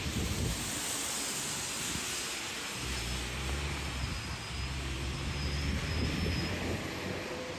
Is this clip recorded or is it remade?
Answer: recorded